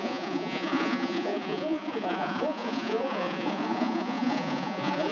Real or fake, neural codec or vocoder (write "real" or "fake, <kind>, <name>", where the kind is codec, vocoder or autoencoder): fake, vocoder, Vocos